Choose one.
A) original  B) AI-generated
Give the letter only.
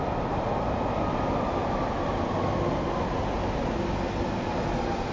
A